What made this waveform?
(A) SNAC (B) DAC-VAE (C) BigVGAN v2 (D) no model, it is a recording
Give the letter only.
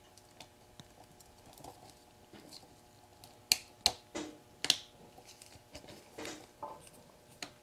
D